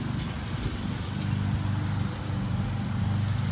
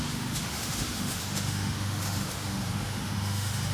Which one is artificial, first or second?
second